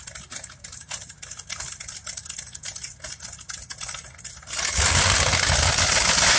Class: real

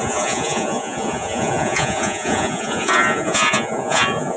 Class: fake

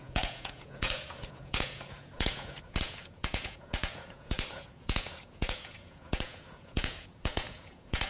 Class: fake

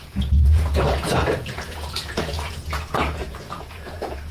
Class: fake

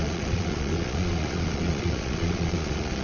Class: fake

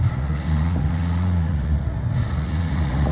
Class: fake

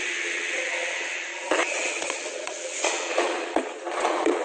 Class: fake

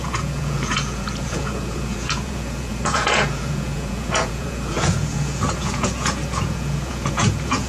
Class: fake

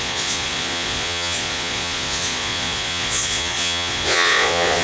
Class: fake